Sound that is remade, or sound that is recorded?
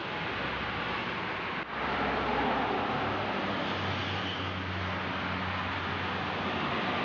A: recorded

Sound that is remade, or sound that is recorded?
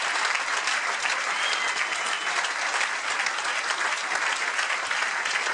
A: recorded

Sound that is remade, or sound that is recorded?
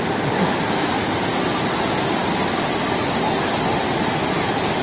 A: recorded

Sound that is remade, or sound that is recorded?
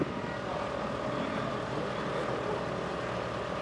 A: recorded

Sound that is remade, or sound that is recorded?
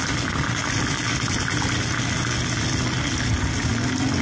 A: recorded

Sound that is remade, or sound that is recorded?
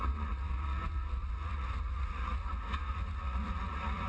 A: remade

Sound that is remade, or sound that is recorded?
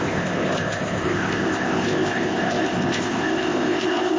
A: remade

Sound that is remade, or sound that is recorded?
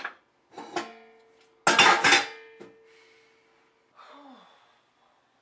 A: recorded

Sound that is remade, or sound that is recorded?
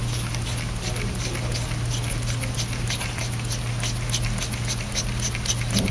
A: recorded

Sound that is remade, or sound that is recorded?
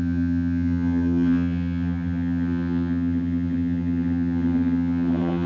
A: remade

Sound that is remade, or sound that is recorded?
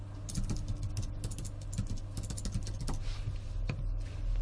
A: recorded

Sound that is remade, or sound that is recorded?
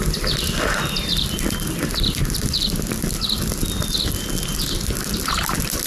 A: recorded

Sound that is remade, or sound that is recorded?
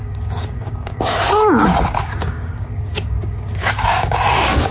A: remade